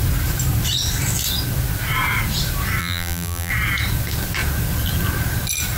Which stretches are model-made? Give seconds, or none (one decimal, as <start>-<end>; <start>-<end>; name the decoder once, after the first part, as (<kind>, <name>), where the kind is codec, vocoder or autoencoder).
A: 2.8-3.5 (vocoder, BigVGAN v2)